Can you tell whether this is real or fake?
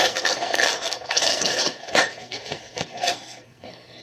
fake